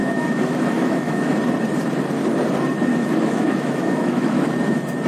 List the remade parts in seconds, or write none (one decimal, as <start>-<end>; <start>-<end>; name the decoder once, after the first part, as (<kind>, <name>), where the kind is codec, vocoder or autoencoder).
0.0-1.3 (autoencoder, DAC-VAE); 2.9-4.5